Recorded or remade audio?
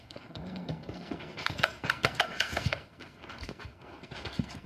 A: remade